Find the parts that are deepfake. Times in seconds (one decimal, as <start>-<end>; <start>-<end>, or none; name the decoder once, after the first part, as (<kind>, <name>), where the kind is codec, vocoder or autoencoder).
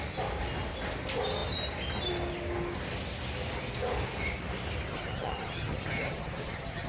4.9-6.9 (vocoder, HiFi-GAN)